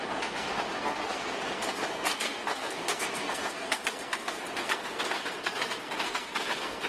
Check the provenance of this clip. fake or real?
fake